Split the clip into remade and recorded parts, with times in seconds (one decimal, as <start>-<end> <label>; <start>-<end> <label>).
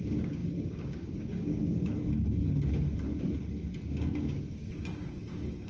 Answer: 0.0-1.8 remade; 1.8-3.9 recorded; 3.9-5.7 remade